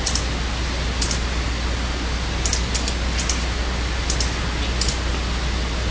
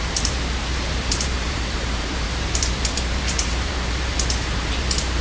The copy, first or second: second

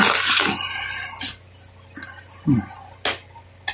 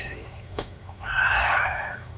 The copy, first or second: second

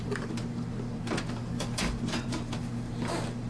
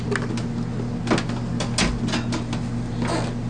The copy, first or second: first